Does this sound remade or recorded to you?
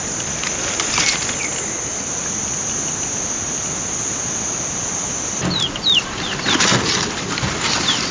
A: recorded